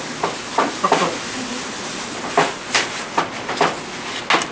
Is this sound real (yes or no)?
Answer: yes